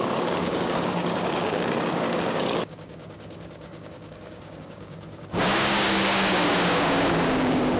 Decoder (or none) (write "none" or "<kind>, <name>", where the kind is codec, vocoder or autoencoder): codec, DAC